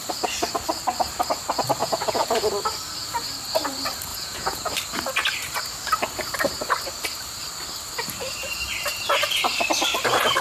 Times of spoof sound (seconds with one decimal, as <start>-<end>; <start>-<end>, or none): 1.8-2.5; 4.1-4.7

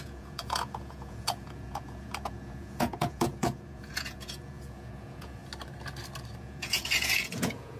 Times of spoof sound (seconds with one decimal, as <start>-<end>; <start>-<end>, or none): 0.0-5.4; 6.4-7.8

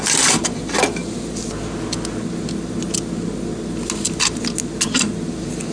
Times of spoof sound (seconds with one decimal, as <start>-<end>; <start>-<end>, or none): none

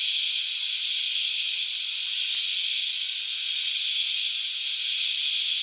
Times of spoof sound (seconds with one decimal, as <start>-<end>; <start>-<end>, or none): none

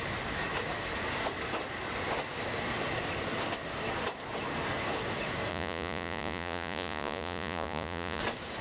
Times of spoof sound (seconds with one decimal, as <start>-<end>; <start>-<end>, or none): 5.5-8.2

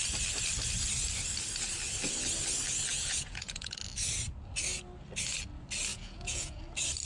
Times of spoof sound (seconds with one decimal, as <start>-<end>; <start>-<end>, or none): 2.9-3.8; 5.9-6.6